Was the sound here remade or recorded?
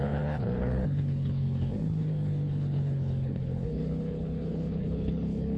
remade